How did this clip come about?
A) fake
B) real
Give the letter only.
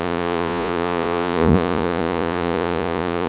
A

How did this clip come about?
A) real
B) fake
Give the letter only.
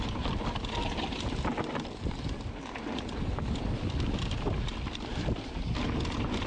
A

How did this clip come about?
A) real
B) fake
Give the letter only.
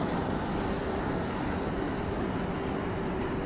A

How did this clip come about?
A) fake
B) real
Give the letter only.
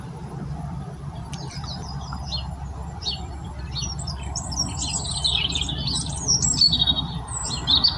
A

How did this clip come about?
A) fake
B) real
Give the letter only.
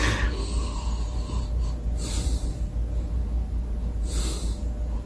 B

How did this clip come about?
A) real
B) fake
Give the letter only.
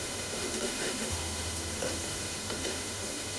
B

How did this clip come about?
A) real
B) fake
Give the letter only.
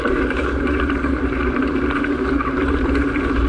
B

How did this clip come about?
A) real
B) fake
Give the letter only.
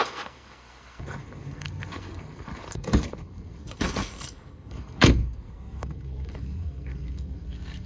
B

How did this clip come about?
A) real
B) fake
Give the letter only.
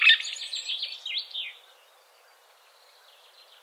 A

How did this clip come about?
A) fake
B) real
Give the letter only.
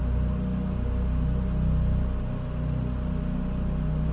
B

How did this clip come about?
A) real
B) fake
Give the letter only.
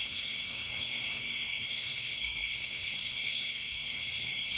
B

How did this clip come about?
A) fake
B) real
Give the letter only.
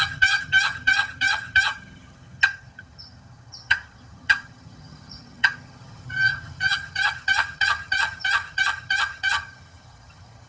A